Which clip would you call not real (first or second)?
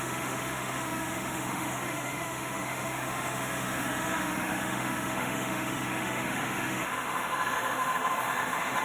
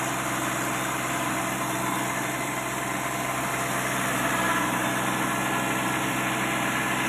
first